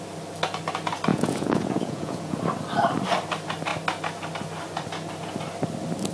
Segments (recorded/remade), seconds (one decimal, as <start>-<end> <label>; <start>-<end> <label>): 0.0-1.1 recorded; 1.1-2.4 remade; 2.4-6.1 recorded